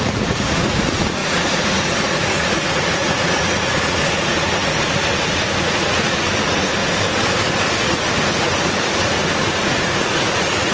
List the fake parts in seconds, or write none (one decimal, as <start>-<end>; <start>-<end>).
0.0-6.8; 7.7-10.7